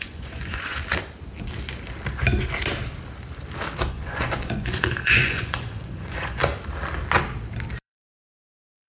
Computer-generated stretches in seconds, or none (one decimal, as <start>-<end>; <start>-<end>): 0.0-0.8; 3.9-6.4; 7.8-8.9

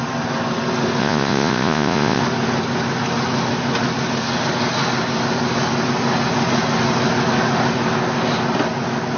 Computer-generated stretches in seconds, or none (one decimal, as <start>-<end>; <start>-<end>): 1.0-2.2

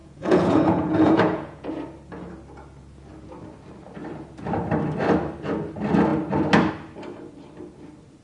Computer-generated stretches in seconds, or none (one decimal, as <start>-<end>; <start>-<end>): 0.0-1.7